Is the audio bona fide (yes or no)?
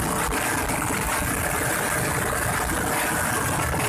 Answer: yes